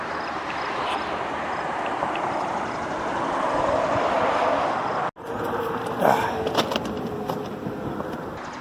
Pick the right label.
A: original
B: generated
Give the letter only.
A